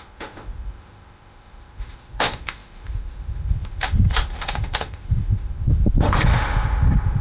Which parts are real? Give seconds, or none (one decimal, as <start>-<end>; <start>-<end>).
none